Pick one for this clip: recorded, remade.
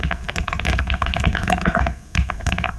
remade